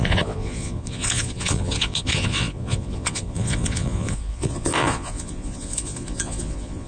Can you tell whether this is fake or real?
fake